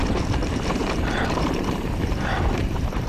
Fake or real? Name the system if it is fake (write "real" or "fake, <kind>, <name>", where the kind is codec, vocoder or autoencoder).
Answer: fake, vocoder, BigVGAN v2